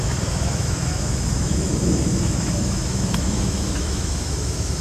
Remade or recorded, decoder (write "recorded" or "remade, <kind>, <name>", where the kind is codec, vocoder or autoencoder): remade, autoencoder, DAC-VAE